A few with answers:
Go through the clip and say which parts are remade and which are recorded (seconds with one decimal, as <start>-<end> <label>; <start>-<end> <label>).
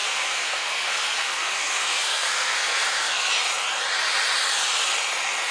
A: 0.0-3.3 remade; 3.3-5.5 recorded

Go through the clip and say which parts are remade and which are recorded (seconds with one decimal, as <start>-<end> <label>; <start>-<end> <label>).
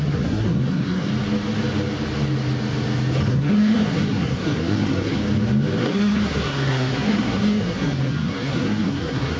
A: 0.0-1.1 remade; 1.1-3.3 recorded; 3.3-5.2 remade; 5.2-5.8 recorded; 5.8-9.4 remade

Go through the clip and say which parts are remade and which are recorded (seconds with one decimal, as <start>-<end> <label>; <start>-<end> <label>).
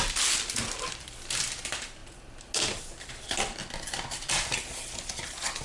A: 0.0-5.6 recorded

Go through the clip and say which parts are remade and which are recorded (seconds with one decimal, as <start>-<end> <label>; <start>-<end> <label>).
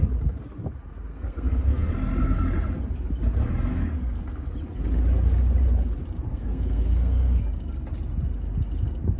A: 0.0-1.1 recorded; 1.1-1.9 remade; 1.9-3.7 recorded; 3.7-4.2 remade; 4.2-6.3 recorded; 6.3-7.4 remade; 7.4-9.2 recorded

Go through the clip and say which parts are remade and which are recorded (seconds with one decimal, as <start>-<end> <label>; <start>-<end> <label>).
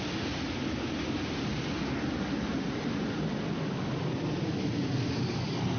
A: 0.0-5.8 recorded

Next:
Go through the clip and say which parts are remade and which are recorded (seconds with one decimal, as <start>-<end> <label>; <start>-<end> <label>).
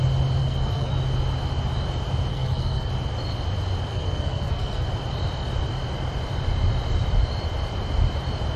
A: 0.0-0.4 recorded; 0.4-0.9 remade; 0.9-2.3 recorded; 2.3-2.9 remade; 2.9-3.9 recorded; 3.9-4.9 remade; 4.9-8.6 recorded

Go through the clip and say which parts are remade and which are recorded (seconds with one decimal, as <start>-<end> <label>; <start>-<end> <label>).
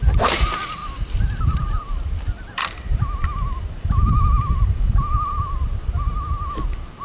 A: 0.0-7.0 recorded